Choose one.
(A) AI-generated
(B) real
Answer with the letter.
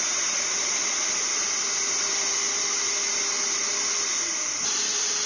B